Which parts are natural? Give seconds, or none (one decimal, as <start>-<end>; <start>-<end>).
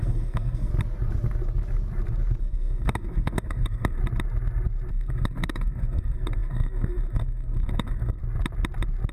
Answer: 0.7-2.4; 4.0-4.9; 8.2-9.1